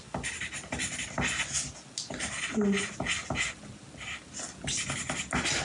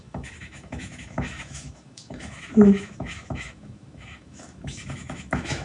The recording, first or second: first